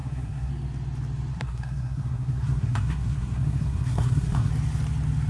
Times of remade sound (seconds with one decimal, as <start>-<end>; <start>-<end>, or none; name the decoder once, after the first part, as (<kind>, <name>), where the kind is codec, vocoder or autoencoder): 0.0-0.5 (codec, SNAC); 1.3-4.5